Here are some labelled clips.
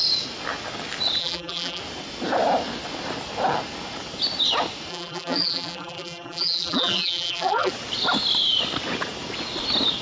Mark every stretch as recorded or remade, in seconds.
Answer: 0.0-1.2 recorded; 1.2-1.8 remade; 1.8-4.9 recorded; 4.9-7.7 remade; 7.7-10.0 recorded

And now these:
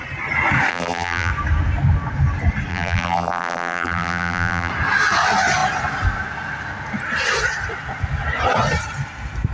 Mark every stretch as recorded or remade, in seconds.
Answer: 0.0-0.7 recorded; 0.7-1.3 remade; 1.3-2.7 recorded; 2.7-4.7 remade; 4.7-9.5 recorded

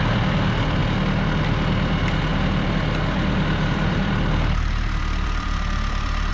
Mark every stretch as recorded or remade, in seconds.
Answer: 0.0-2.3 recorded; 2.3-6.3 remade

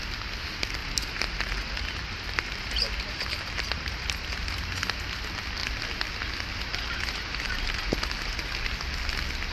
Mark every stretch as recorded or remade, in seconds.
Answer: 0.0-0.8 recorded; 0.8-4.6 remade; 4.6-6.7 recorded; 6.7-8.4 remade; 8.4-9.5 recorded

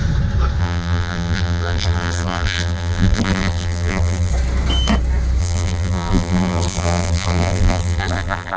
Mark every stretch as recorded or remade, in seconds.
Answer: 0.0-0.6 recorded; 0.6-4.3 remade; 4.3-5.4 recorded; 5.4-8.6 remade

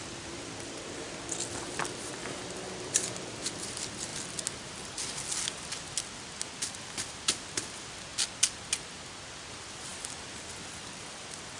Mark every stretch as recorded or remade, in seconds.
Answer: 0.0-4.1 remade; 4.1-6.9 recorded; 6.9-8.1 remade; 8.1-9.5 recorded; 9.5-9.9 remade; 9.9-10.4 recorded; 10.4-11.6 remade